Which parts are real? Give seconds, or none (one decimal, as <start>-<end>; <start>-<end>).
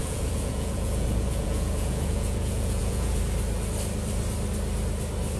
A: 3.2-5.4